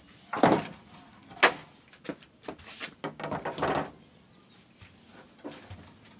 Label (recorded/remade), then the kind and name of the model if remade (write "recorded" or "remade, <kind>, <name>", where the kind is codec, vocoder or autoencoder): recorded